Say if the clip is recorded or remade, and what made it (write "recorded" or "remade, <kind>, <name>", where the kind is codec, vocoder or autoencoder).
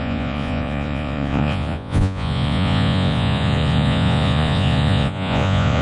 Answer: remade, vocoder, Vocos